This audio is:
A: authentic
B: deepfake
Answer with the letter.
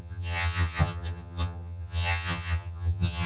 B